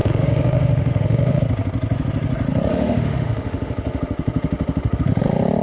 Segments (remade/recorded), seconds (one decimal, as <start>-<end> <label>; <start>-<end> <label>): 0.0-1.4 remade; 1.4-2.7 recorded; 2.7-5.0 remade; 5.0-5.6 recorded